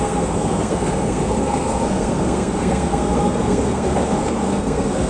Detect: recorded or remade remade